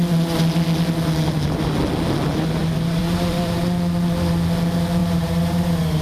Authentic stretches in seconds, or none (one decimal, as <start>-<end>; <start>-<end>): 0.0-2.6; 3.6-5.0